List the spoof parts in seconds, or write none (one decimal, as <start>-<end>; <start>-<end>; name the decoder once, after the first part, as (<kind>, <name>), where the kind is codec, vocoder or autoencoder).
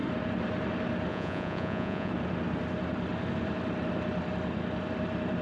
1.1-2.1 (vocoder, Vocos)